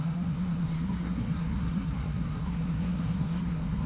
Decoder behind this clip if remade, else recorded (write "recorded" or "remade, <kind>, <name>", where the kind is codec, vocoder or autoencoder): remade, codec, SNAC